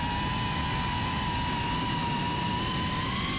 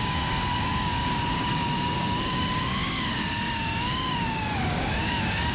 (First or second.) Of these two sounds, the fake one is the second